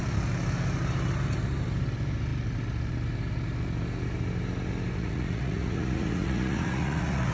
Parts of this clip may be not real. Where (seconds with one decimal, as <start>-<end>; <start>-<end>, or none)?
5.0-7.3